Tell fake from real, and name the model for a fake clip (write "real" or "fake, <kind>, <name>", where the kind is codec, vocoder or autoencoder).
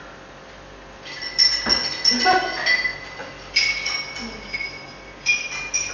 real